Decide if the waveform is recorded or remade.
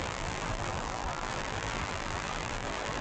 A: remade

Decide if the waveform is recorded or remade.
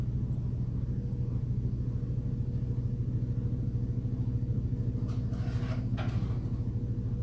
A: recorded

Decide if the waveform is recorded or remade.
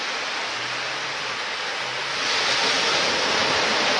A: recorded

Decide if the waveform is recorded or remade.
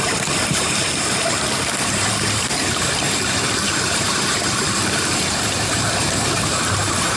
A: remade